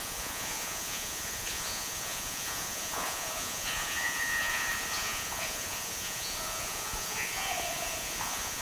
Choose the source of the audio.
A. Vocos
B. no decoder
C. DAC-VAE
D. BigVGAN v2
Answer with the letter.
A